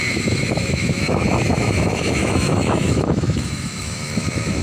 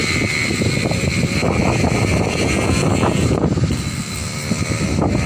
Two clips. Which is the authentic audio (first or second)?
second